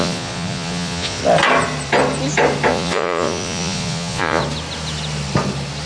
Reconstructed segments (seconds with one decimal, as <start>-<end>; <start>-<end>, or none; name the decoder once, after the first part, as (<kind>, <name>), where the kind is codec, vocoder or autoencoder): 0.0-1.2 (vocoder, Vocos); 2.7-4.4